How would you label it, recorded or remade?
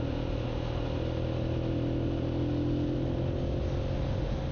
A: recorded